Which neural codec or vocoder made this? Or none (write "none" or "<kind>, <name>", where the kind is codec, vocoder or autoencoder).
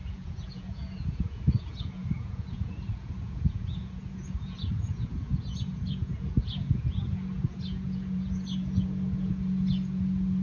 vocoder, Vocos